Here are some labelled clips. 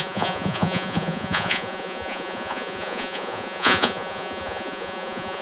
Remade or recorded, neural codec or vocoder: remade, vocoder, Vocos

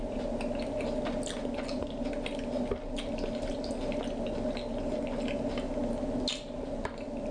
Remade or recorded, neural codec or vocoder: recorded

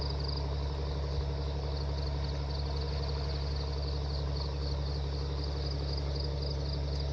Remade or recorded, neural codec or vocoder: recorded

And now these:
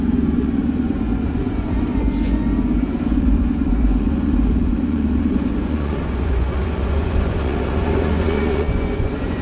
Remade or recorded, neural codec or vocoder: remade, vocoder, Vocos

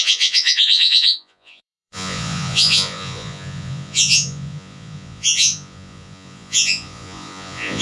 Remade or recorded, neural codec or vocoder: remade, vocoder, Vocos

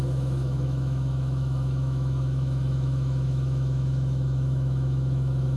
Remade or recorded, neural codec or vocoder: remade, autoencoder, DAC-VAE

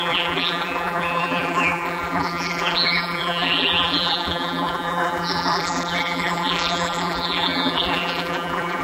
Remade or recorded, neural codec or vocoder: remade, vocoder, BigVGAN v2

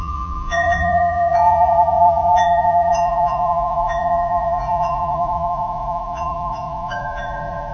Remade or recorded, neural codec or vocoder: remade, vocoder, Vocos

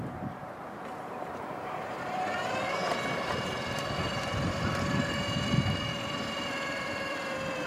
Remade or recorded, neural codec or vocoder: remade, vocoder, BigVGAN v2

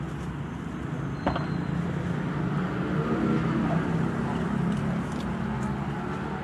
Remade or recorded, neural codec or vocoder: recorded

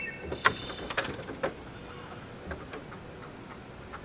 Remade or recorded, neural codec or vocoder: recorded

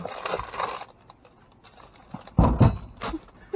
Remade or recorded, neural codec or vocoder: recorded